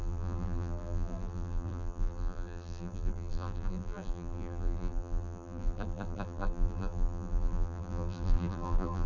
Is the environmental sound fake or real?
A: fake